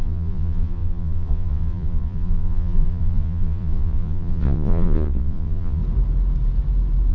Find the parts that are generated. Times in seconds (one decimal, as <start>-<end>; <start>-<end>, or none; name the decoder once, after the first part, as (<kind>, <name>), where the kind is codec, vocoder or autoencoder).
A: 0.0-5.8 (vocoder, Vocos)